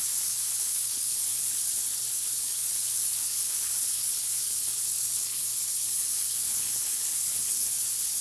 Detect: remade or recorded remade